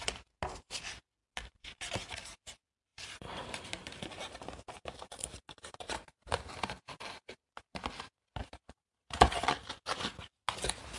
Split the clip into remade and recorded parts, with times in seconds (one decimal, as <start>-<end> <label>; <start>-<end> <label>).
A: 0.0-2.9 recorded; 2.9-7.3 remade; 7.3-8.4 recorded; 8.4-9.3 remade; 9.3-11.0 recorded